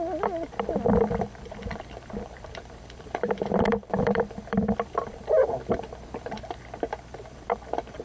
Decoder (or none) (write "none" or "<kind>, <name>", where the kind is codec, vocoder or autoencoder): vocoder, BigVGAN v2